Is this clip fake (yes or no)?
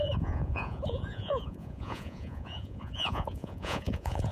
yes